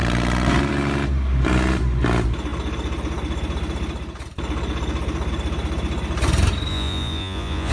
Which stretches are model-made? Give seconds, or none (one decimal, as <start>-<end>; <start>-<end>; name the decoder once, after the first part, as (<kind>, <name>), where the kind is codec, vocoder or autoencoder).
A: 6.7-7.7 (vocoder, Vocos)